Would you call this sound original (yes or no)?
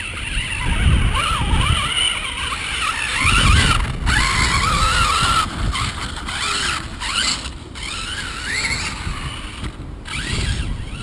yes